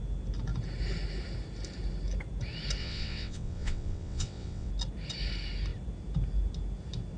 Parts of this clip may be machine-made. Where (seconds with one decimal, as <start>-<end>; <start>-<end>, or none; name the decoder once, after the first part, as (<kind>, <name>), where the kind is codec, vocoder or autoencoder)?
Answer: 2.8-4.7 (vocoder, WaveNeXt)